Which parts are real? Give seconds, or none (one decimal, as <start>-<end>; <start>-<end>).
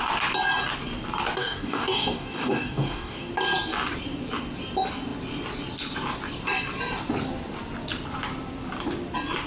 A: 0.0-1.4; 3.3-9.5